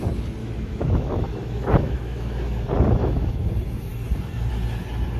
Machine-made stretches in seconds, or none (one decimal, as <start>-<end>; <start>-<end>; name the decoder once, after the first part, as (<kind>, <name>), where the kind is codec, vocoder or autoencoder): 0.4-2.6 (autoencoder, DAC-VAE); 3.0-3.5